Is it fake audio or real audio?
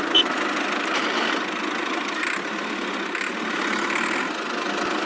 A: real